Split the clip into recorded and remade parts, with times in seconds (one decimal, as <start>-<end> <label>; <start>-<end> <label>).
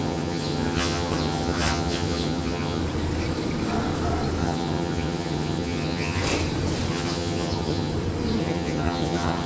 0.0-2.8 remade; 2.8-4.4 recorded; 4.4-6.2 remade; 6.2-6.9 recorded; 6.9-7.9 remade; 7.9-8.4 recorded; 8.4-9.5 remade